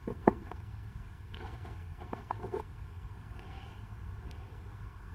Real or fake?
fake